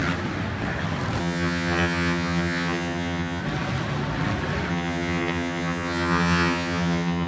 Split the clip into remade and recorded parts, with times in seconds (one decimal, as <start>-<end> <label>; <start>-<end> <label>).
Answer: 0.0-1.2 recorded; 1.2-3.4 remade; 3.4-4.7 recorded; 4.7-7.3 remade